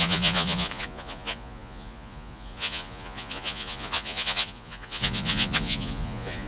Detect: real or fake fake